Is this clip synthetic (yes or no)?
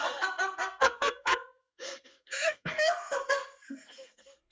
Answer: yes